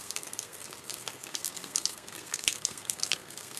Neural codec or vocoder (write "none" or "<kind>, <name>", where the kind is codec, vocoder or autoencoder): codec, SNAC